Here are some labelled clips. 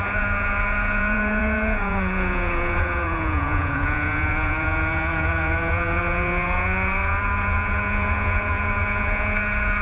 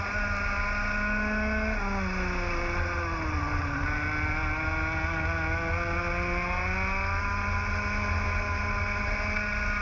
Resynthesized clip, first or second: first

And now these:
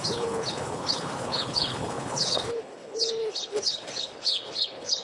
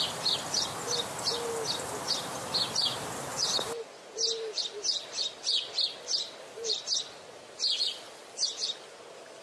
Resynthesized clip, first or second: first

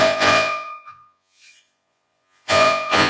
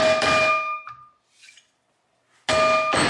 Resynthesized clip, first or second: first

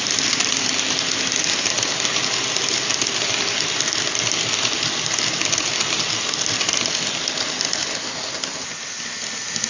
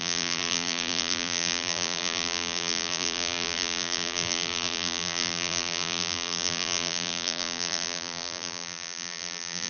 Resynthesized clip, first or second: second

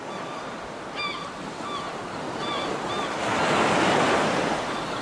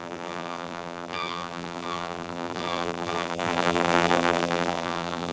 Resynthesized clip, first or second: second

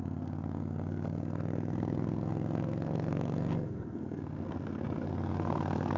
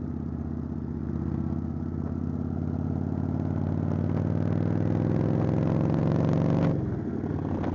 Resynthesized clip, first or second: first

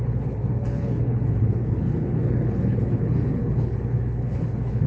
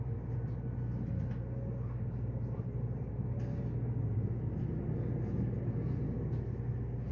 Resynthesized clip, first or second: first